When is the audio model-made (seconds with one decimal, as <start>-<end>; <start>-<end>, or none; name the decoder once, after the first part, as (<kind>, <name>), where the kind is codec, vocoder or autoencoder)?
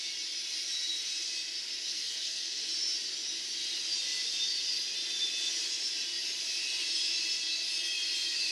1.9-2.7 (codec, SNAC)